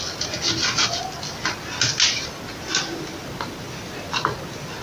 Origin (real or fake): real